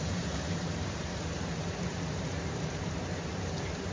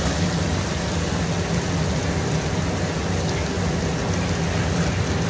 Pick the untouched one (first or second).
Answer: second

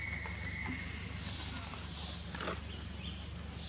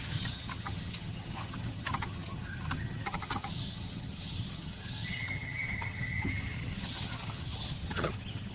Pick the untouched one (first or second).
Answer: first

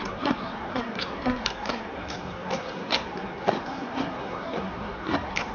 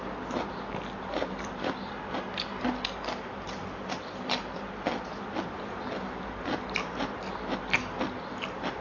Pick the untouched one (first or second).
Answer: second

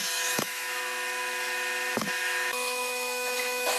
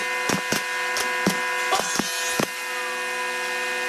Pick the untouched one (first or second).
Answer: second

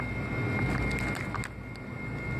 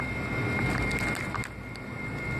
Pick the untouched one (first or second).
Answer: first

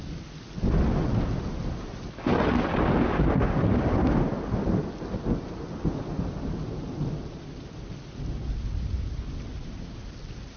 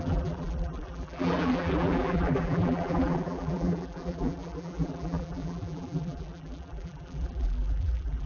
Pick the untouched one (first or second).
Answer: first